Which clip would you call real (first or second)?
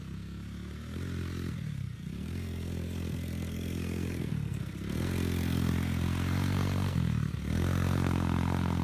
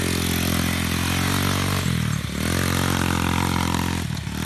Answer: second